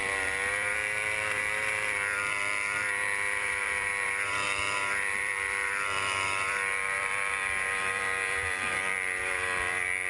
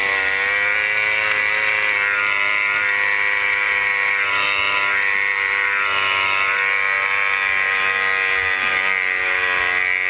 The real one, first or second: second